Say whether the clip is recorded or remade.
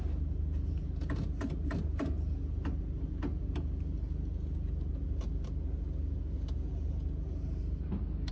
recorded